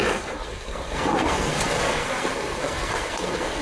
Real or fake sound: fake